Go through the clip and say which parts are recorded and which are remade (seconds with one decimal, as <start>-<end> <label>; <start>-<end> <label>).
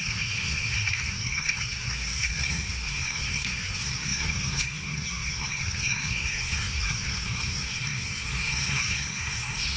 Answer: 0.0-9.8 remade